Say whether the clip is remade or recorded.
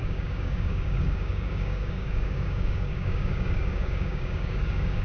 remade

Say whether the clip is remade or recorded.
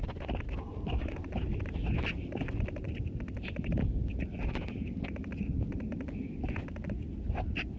recorded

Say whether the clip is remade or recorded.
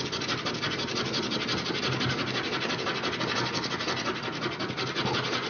recorded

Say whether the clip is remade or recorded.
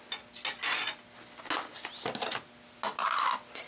recorded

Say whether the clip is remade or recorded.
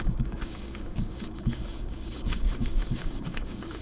remade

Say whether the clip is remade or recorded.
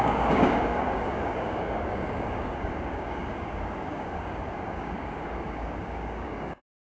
remade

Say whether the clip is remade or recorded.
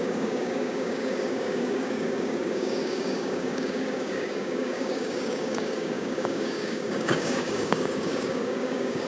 remade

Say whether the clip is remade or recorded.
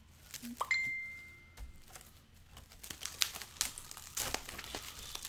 recorded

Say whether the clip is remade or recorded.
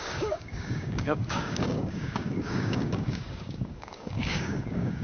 remade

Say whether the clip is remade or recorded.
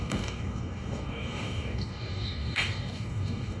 remade